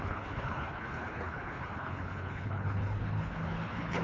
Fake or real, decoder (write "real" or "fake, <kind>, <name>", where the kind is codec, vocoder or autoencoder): fake, codec, HILCodec